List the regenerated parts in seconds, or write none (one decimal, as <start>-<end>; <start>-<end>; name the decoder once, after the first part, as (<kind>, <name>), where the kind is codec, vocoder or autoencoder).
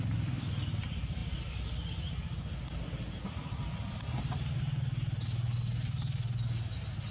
none